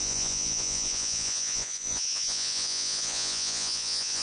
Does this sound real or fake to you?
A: fake